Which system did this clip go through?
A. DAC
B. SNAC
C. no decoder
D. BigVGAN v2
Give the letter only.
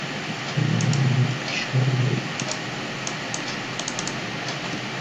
C